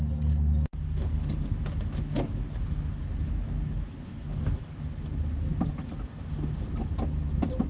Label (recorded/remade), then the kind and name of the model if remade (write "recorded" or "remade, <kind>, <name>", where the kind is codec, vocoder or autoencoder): recorded